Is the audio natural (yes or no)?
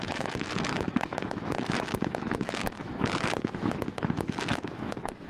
no